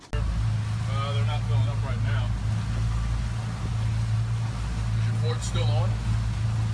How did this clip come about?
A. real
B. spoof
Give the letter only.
A